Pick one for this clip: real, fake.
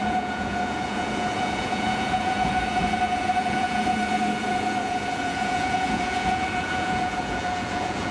fake